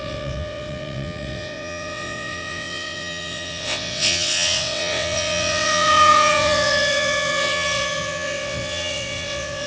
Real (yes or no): no